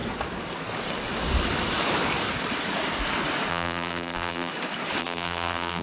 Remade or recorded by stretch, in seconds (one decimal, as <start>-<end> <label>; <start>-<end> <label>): 0.0-3.5 recorded; 3.5-4.5 remade; 4.5-5.0 recorded; 5.0-5.8 remade